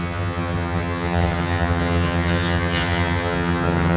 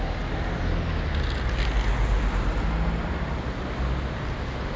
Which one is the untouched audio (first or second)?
second